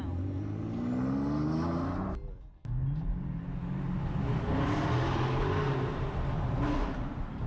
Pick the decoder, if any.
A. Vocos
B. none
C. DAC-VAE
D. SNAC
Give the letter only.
B